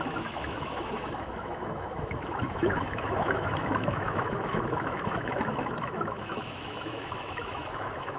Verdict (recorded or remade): remade